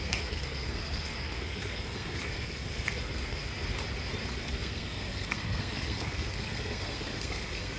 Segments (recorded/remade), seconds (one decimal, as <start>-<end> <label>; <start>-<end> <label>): 0.0-3.4 remade; 3.4-4.4 recorded; 4.4-7.8 remade